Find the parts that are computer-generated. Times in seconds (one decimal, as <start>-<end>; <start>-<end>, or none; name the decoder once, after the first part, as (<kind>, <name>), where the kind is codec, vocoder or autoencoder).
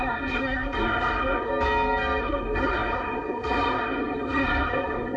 0.0-1.5 (codec, SNAC); 2.2-5.2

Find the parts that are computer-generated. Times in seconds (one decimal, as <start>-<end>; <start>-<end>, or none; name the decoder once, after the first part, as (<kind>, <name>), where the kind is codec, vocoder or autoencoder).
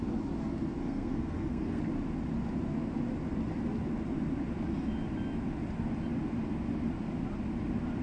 0.8-1.8 (codec, SNAC)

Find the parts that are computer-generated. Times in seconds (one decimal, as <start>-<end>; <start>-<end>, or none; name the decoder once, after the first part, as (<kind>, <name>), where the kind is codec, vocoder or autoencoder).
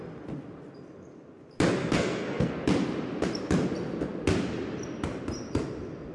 1.8-2.5 (codec, SNAC)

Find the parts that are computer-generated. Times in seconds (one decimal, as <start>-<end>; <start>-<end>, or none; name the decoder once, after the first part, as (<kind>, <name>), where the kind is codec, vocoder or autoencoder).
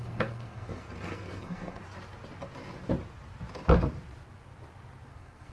0.0-1.8 (codec, SNAC); 5.1-5.5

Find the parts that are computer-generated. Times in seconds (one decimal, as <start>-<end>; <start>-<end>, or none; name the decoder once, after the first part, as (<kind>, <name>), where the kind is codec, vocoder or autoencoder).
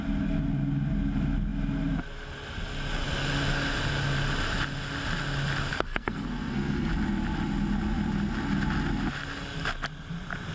5.7-6.9 (codec, SNAC)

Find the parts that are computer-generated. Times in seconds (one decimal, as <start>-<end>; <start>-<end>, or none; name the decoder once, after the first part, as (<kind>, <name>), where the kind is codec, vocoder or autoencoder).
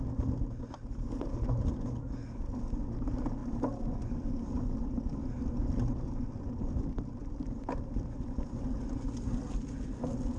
none